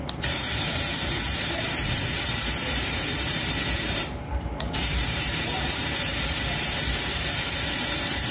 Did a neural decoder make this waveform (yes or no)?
yes